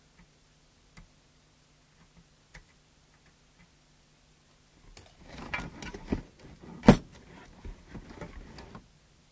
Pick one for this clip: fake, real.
real